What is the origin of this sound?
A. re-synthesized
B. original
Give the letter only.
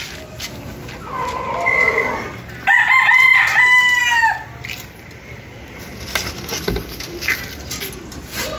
B